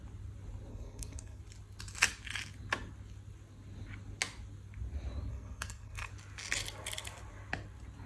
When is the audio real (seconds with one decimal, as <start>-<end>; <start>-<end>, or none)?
0.0-0.7; 1.4-5.3; 6.1-8.1